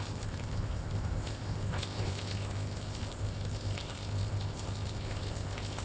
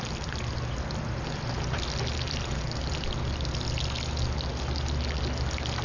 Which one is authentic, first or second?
second